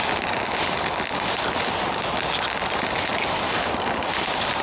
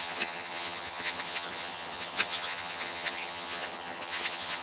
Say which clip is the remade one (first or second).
second